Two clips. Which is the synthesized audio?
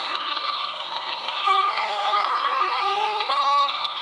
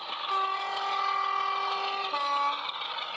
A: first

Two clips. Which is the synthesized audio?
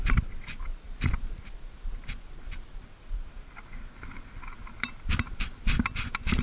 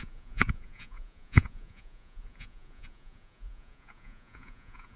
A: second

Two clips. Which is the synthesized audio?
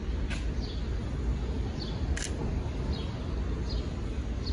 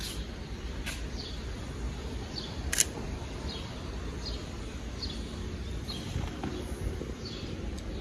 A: second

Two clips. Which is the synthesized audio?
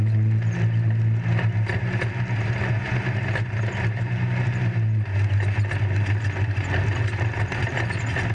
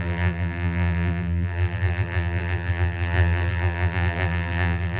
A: second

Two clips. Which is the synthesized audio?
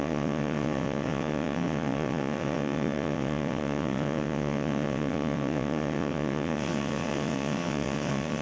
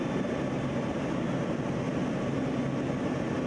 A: first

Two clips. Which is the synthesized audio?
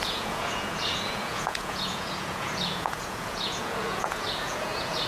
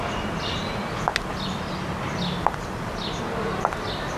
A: first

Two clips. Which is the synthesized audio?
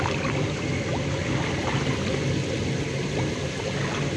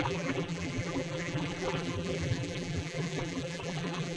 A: second